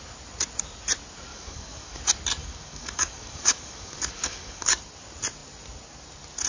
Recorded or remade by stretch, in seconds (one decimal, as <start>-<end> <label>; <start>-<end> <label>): 0.0-1.3 recorded; 1.3-2.0 remade; 2.0-2.4 recorded; 2.4-4.8 remade; 4.8-6.5 recorded